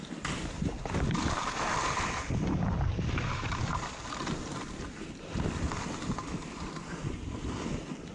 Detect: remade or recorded recorded